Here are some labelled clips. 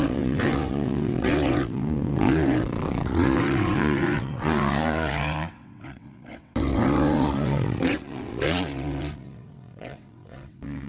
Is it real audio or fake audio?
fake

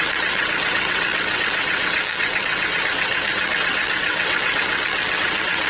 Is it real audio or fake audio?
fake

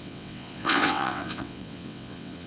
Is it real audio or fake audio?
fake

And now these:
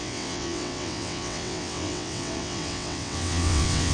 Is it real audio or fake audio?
fake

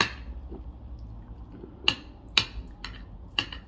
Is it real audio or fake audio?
real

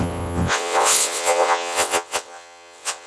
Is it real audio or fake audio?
fake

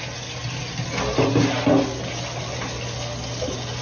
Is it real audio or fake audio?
real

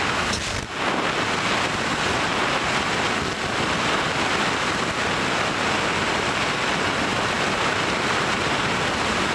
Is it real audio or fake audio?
real